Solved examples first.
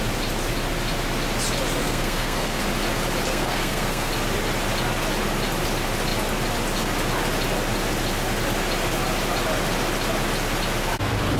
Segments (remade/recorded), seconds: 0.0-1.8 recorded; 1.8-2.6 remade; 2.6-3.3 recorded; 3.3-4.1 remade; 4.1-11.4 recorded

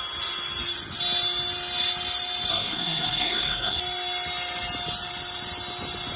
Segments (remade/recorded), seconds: 0.0-2.5 recorded; 2.5-3.8 remade; 3.8-6.2 recorded

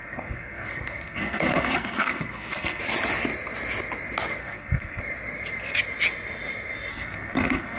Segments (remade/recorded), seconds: 0.0-2.8 remade; 2.8-4.4 recorded; 4.4-5.0 remade; 5.0-6.9 recorded; 6.9-7.8 remade

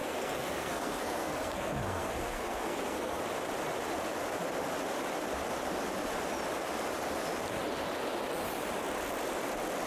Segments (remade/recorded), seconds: 0.0-3.2 remade; 3.2-9.9 recorded

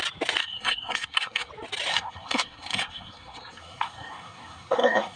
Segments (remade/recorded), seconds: 0.0-0.4 recorded; 0.4-1.5 remade; 1.5-1.9 recorded; 1.9-5.2 remade

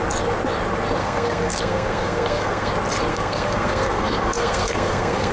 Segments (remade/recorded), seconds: 0.0-1.0 recorded; 1.0-2.7 remade; 2.7-3.1 recorded; 3.1-5.3 remade

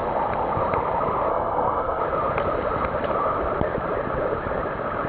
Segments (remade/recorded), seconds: 0.0-1.3 recorded; 1.3-2.0 remade; 2.0-5.1 recorded